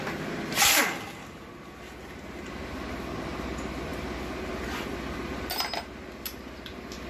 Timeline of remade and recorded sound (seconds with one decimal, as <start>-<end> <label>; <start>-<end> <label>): 0.0-7.1 recorded